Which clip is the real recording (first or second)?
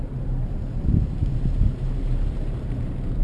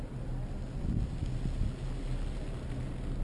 second